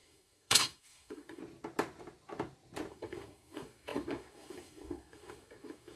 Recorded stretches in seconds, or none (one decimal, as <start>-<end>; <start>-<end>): 1.4-2.9